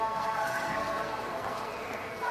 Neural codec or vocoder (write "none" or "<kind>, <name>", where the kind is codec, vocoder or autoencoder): codec, SNAC